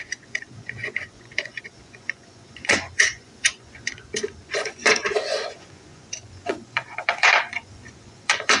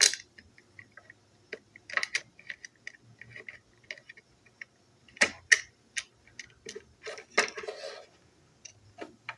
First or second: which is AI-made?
first